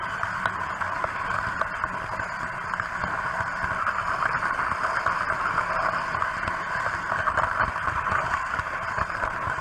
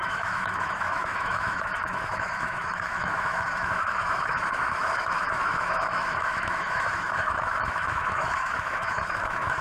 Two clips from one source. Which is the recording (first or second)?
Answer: first